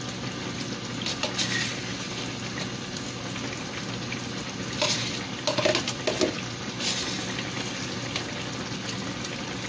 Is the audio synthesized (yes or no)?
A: no